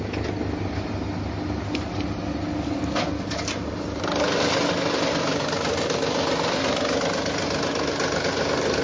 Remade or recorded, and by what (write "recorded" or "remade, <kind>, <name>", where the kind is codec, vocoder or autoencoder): recorded